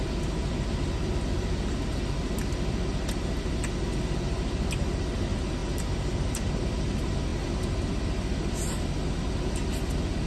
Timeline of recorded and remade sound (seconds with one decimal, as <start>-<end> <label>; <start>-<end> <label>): 0.0-10.3 recorded